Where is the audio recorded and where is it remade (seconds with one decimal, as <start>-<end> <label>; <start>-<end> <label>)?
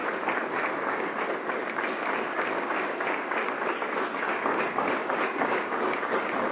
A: 0.0-0.5 recorded; 0.5-6.5 remade